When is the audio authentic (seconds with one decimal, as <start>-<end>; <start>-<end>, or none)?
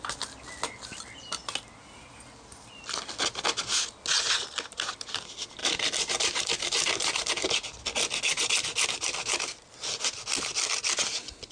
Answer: 0.0-5.6; 7.3-11.5